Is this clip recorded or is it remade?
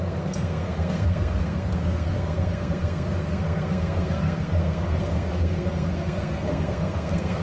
remade